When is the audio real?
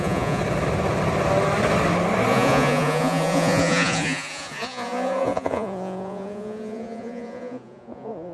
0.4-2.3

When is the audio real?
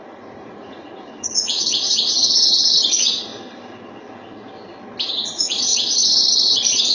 3.3-5.1; 5.7-6.3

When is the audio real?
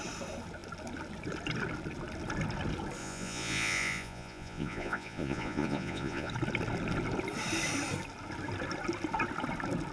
0.0-3.0; 6.3-9.9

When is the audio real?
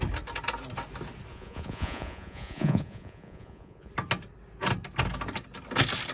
0.0-1.3; 3.9-6.1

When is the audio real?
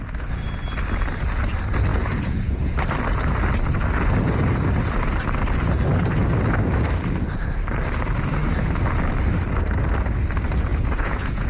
0.0-1.9; 2.7-10.7